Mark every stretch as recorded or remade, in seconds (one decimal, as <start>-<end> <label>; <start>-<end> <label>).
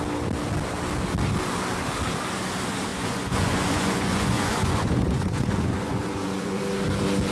0.0-2.9 recorded; 2.9-6.6 remade; 6.6-7.3 recorded